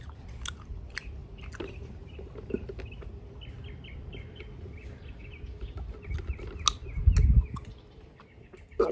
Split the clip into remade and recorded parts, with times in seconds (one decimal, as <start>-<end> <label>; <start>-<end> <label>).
0.0-8.9 recorded